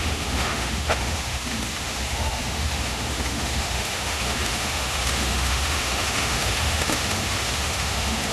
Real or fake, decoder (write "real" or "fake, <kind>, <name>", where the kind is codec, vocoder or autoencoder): fake, autoencoder, DAC-VAE